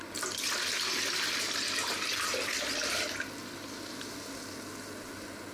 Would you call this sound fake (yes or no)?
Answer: no